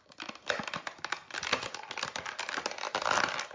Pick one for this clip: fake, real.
real